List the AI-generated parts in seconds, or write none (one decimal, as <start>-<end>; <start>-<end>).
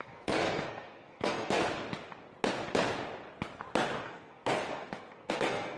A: 0.0-1.6; 4.0-5.8